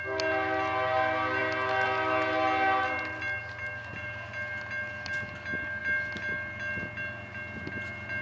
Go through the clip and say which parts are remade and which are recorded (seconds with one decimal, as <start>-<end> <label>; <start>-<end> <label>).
0.0-8.2 recorded